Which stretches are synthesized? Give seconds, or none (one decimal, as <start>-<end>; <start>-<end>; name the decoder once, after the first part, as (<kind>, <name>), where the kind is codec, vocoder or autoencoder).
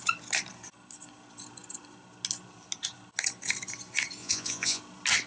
4.2-4.8 (vocoder, Vocos)